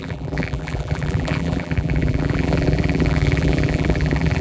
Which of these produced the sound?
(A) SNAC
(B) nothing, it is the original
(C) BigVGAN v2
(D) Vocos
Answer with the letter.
C